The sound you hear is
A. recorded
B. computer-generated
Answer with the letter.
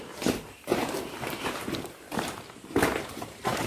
B